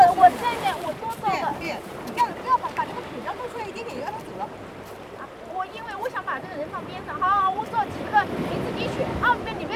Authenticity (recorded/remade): remade